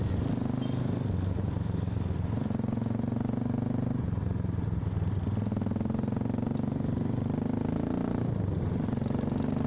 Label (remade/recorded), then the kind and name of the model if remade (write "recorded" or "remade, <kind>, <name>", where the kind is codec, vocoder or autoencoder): recorded